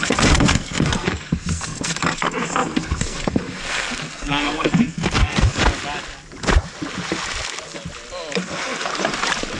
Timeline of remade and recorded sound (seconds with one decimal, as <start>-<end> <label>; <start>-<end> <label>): 0.0-5.6 remade; 5.6-8.4 recorded; 8.4-8.9 remade; 8.9-9.6 recorded